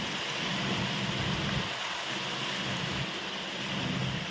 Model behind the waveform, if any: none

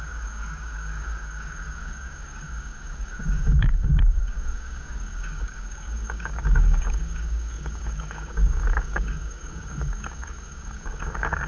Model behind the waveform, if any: codec, DAC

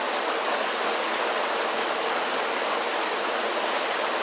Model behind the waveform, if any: none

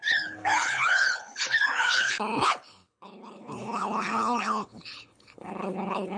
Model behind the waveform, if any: codec, HILCodec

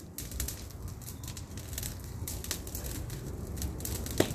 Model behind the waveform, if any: none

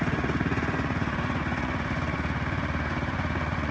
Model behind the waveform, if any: vocoder, Vocos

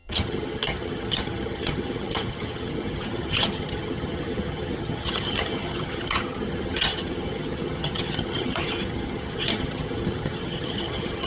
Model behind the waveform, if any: vocoder, HiFi-GAN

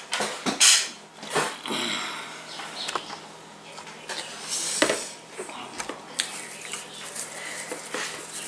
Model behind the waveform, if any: none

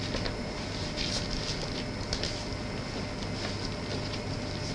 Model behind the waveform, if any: none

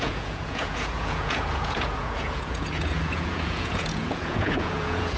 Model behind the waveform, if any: vocoder, Vocos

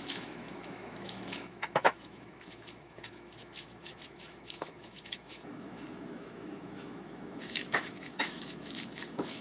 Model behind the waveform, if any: autoencoder, DAC-VAE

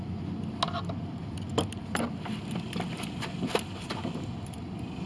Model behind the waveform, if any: none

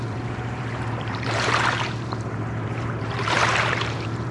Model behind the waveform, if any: vocoder, BigVGAN v2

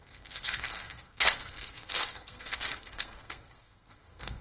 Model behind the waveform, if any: codec, SNAC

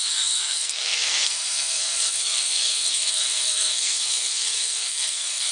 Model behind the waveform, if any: codec, SNAC